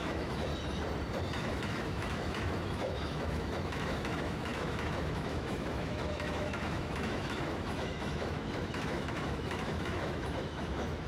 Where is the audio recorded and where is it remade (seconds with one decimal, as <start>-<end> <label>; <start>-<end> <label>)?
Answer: 0.0-0.5 remade; 0.5-1.4 recorded; 1.4-11.1 remade